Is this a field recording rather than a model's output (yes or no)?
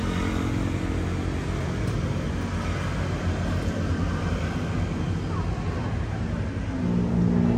yes